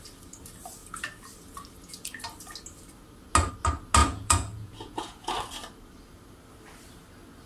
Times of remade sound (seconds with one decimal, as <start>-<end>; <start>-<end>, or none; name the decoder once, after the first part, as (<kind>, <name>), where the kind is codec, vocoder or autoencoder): 4.0-5.3 (vocoder, Vocos)